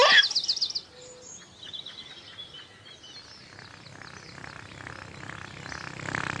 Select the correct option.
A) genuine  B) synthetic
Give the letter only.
A